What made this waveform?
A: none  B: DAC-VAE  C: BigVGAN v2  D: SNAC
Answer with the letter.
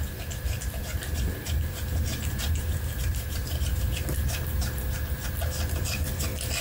A